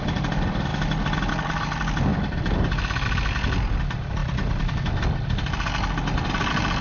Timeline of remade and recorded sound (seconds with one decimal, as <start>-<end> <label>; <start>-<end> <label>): 0.0-6.8 recorded